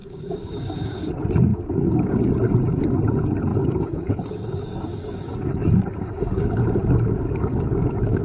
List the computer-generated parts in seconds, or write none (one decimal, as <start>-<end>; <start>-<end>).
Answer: 0.0-1.1; 1.5-2.3; 3.5-8.2

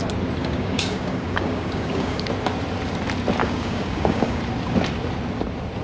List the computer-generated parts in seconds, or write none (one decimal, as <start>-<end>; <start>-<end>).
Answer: 0.4-2.3; 3.4-4.4

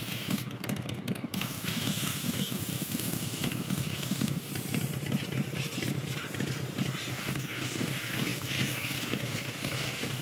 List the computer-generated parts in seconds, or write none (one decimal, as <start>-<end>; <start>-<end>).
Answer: 0.0-4.5; 7.1-10.2

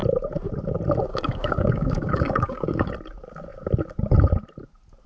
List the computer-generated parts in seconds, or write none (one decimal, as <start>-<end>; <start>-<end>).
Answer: 1.1-2.9

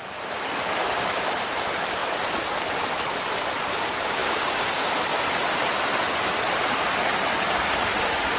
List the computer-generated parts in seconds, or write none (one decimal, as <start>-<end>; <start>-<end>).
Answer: 4.2-4.9

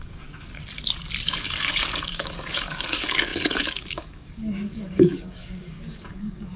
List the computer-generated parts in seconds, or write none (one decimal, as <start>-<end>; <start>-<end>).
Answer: 0.0-0.6; 1.3-6.6